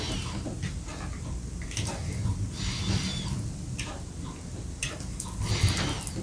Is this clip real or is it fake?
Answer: real